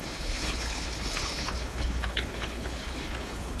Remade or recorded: remade